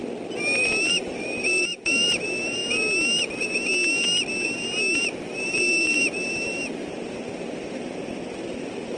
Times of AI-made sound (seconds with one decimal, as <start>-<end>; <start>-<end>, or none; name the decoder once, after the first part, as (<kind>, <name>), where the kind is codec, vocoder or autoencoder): 0.9-2.6 (vocoder, BigVGAN v2); 5.2-9.0